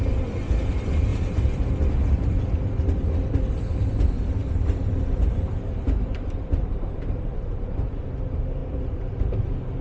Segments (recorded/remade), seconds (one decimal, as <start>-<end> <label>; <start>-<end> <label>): 0.0-1.1 recorded; 1.1-1.7 remade; 1.7-4.4 recorded; 4.4-7.6 remade; 7.6-8.6 recorded; 8.6-9.4 remade; 9.4-9.8 recorded